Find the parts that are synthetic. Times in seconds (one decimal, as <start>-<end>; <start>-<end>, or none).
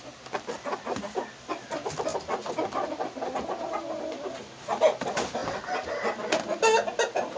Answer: none